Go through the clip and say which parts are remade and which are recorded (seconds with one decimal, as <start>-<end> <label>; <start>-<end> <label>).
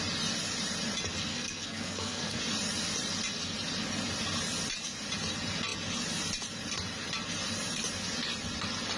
0.0-1.3 recorded; 1.3-2.4 remade; 2.4-9.0 recorded